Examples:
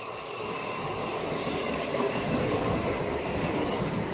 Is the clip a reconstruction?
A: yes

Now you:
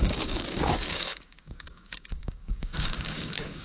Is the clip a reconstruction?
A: yes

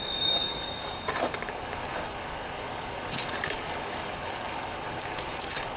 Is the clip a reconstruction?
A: yes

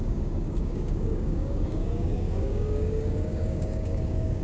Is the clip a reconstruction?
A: yes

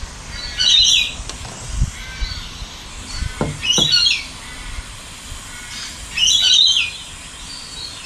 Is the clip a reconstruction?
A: no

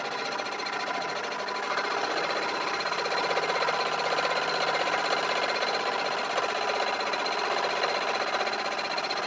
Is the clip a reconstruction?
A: no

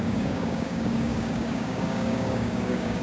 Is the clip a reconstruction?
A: yes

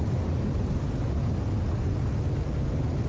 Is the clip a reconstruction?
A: no